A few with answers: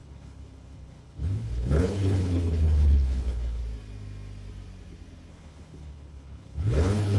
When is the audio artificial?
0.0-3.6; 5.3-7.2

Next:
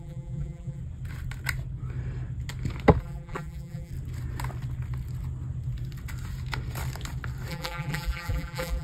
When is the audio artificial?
0.0-0.8; 3.0-3.9; 7.5-8.8

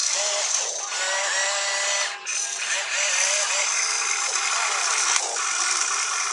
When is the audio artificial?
none